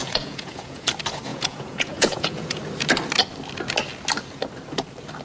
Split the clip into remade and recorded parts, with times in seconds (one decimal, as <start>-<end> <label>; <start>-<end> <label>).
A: 0.0-0.9 remade; 0.9-1.3 recorded; 1.3-2.6 remade; 2.6-5.2 recorded